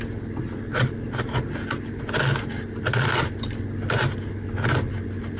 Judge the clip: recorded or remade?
recorded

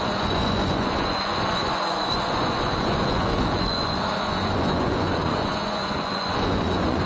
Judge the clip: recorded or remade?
remade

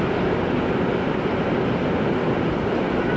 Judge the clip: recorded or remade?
recorded